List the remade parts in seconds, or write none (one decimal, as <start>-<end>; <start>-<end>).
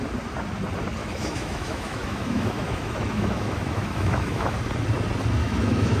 1.0-4.6; 5.4-6.0